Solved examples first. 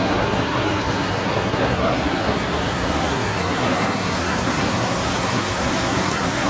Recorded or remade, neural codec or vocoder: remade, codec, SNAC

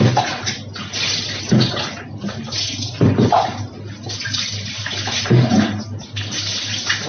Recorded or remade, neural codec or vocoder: recorded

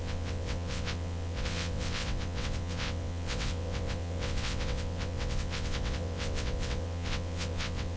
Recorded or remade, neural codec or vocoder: remade, vocoder, WaveNeXt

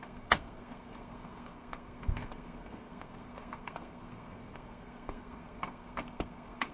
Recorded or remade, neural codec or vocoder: remade, codec, SNAC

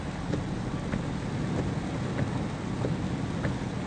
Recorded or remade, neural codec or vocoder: recorded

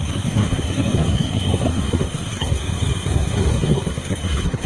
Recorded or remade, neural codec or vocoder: remade, codec, SNAC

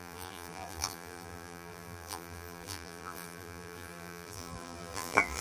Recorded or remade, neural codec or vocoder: remade, vocoder, BigVGAN v2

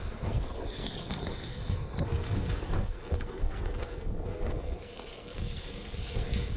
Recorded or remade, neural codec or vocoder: remade, codec, SNAC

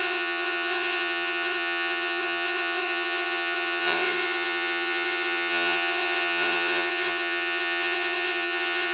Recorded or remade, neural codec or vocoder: remade, vocoder, WaveNeXt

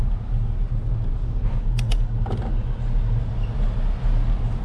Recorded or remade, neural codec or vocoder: recorded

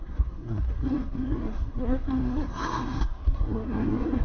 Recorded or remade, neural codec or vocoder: remade, codec, SNAC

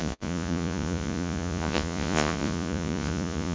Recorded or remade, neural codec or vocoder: remade, vocoder, Vocos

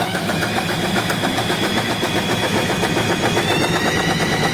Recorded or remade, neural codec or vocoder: remade, autoencoder, DAC-VAE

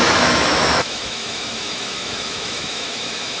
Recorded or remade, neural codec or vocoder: remade, autoencoder, DAC-VAE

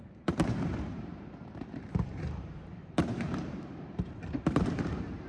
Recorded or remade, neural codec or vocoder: remade, vocoder, BigVGAN v2